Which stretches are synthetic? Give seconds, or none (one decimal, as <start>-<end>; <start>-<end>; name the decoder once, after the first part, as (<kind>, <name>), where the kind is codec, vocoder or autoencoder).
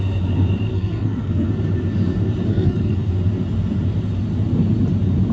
0.7-1.5 (codec, SNAC); 2.5-3.1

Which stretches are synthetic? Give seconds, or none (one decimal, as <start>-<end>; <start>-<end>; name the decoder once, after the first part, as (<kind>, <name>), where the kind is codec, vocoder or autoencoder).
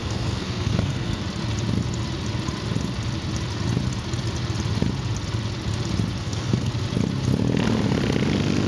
0.0-1.2 (codec, SNAC); 6.2-6.7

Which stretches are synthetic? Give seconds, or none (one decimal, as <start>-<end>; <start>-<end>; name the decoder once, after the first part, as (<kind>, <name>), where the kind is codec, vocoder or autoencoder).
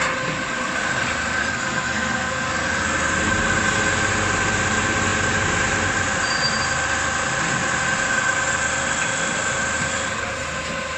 1.4-2.5 (codec, SNAC)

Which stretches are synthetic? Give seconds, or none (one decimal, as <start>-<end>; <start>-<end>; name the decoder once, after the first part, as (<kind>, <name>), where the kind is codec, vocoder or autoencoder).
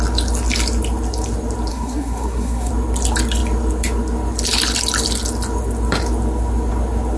1.7-2.7 (codec, SNAC)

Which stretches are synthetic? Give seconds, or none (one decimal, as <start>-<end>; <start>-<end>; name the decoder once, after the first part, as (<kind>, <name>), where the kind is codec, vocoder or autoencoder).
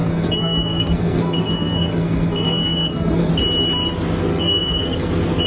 0.0-3.3 (codec, SNAC); 4.3-5.1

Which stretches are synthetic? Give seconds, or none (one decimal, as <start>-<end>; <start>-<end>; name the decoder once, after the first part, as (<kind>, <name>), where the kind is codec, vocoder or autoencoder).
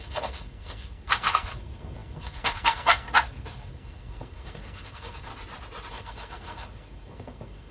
0.0-5.3 (codec, SNAC); 5.9-7.7